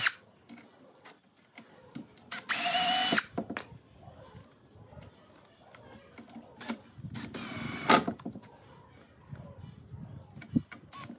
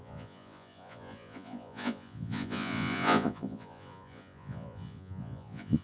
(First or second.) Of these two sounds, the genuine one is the first